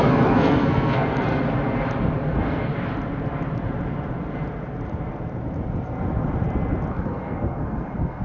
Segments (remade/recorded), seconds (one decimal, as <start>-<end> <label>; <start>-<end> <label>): 0.0-1.4 remade; 1.4-2.3 recorded; 2.3-2.7 remade; 2.7-6.9 recorded; 6.9-8.2 remade